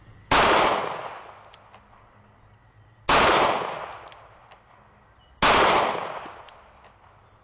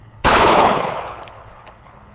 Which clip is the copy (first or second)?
second